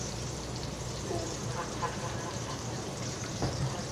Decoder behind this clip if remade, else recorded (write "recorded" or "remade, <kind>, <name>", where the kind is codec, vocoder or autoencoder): remade, vocoder, BigVGAN v2